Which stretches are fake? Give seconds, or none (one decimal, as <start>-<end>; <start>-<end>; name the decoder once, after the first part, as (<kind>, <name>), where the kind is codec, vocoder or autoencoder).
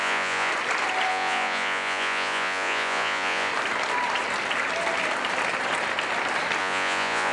0.0-0.5 (vocoder, Vocos); 1.1-3.5; 6.6-7.3